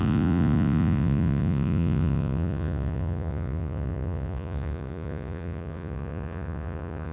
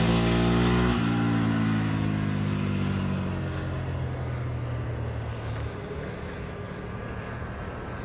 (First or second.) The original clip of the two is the second